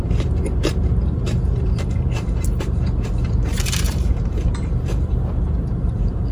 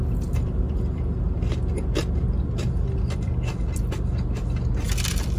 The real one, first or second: second